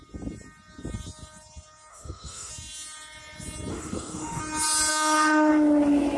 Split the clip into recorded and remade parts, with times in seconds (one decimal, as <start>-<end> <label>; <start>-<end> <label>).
0.0-1.9 recorded; 1.9-2.5 remade; 2.5-3.7 recorded; 3.7-4.4 remade; 4.4-4.9 recorded; 4.9-5.5 remade; 5.5-6.2 recorded